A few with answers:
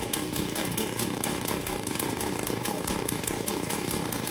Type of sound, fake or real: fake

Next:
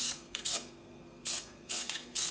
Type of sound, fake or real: fake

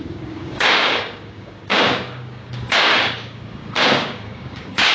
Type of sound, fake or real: fake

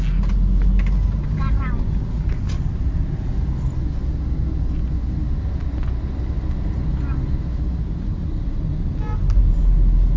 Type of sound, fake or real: real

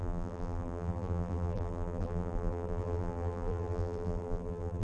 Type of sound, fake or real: fake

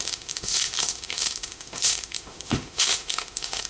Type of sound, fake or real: fake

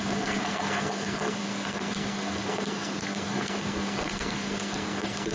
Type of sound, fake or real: fake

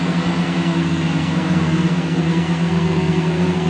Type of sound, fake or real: fake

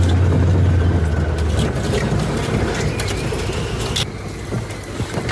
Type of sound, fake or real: real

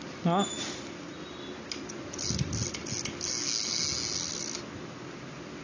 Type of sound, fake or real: real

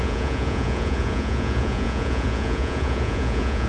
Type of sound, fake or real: fake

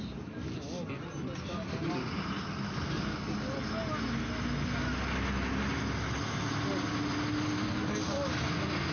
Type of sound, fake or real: real